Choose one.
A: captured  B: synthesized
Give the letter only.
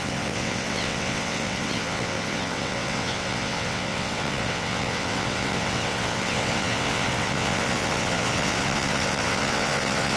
B